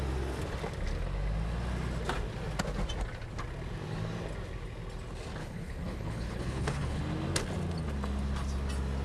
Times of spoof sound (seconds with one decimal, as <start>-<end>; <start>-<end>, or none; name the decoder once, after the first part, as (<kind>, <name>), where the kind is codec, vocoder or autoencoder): 5.4-7.0 (codec, HILCodec)